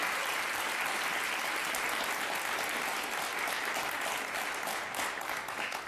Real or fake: real